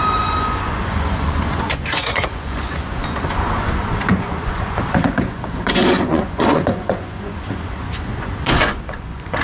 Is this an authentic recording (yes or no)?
no